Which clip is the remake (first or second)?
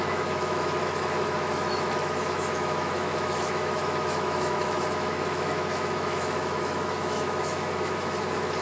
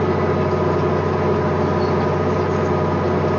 first